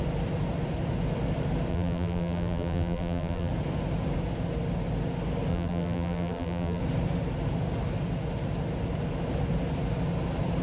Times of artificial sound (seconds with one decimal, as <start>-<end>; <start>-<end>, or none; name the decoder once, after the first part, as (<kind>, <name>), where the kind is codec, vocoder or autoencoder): 1.7-3.5 (vocoder, BigVGAN v2); 5.5-6.8